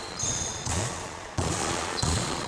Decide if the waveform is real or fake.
fake